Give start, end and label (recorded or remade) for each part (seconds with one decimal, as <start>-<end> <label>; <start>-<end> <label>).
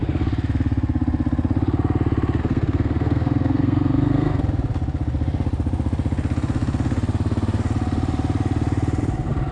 0.0-2.4 recorded; 2.4-4.4 remade; 4.4-9.5 recorded